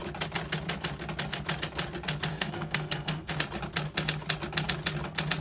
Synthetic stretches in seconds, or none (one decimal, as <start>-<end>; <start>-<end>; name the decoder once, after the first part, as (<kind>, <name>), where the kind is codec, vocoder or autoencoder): 2.3-3.3 (codec, SNAC)